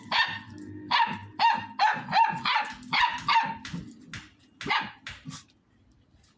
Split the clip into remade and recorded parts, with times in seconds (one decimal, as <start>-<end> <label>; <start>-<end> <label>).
0.0-6.4 recorded